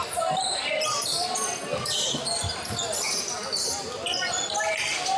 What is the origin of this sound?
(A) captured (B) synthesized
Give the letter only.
A